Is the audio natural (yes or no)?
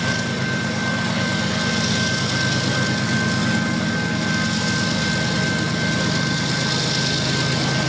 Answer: yes